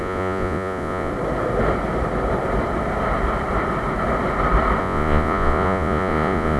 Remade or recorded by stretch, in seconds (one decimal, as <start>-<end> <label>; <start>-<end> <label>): 0.0-1.1 remade; 1.1-4.8 recorded; 4.8-6.6 remade